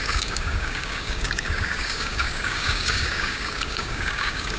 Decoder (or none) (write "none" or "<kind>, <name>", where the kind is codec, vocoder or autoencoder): codec, DAC